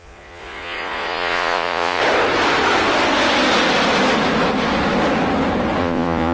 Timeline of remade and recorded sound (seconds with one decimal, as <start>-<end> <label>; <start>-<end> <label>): 0.0-2.0 remade; 2.0-5.8 recorded; 5.8-6.3 remade